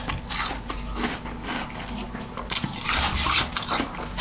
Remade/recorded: recorded